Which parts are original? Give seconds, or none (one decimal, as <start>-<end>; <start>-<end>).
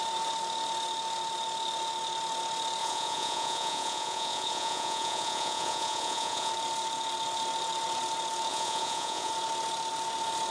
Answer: 0.0-2.8; 6.5-8.5; 9.3-10.5